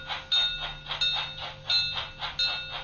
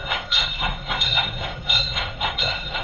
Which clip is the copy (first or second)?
second